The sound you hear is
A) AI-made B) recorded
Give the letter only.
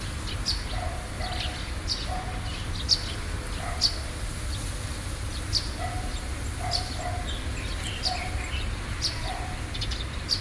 B